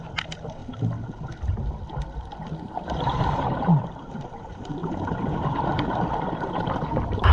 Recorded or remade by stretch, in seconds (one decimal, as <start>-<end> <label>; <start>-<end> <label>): 0.0-0.6 remade; 0.6-3.0 recorded; 3.0-7.3 remade